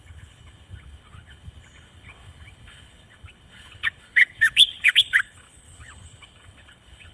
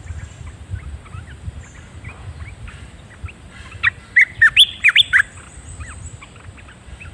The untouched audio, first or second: second